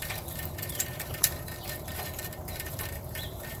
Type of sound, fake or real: fake